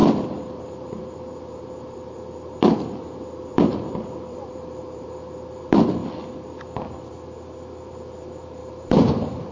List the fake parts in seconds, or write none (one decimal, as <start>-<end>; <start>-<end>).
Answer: 4.3-5.1; 8.6-9.5